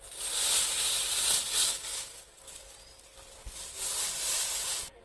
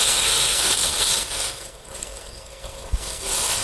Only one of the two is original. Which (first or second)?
first